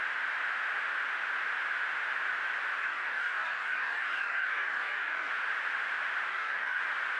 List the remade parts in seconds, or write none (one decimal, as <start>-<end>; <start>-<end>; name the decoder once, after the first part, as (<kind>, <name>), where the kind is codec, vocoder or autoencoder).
2.8-5.3 (codec, DAC); 6.3-6.8

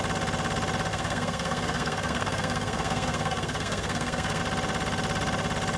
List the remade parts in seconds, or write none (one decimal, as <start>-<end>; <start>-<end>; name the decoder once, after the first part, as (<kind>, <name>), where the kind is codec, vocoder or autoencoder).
0.9-4.4 (codec, SNAC)

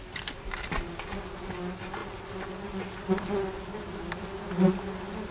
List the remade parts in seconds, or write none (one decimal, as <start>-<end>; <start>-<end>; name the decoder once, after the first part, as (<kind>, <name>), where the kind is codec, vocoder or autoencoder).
none

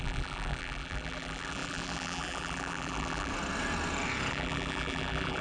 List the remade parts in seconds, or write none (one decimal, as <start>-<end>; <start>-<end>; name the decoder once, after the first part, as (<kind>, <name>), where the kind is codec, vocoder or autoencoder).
0.0-3.3 (vocoder, BigVGAN v2); 4.3-5.4

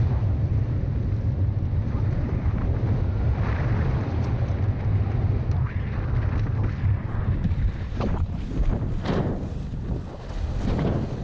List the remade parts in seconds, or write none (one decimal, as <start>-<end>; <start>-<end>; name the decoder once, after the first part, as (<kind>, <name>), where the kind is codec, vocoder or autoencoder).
1.8-5.8 (vocoder, BigVGAN v2); 7.0-9.3

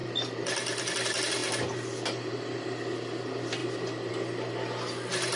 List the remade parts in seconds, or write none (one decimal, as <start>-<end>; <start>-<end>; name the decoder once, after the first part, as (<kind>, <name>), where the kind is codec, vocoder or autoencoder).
none

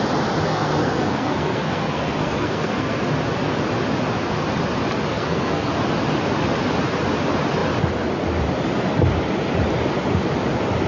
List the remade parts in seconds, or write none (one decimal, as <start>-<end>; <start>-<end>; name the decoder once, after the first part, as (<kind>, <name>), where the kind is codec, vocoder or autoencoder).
0.5-3.0 (codec, SNAC); 5.1-5.7